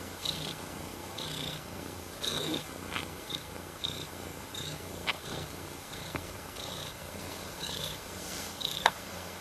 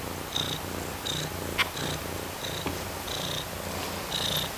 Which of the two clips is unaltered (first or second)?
second